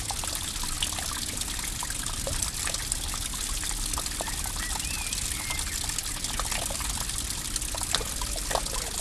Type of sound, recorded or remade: recorded